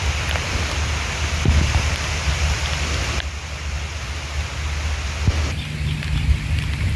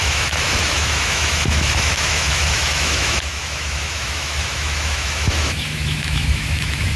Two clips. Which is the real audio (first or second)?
first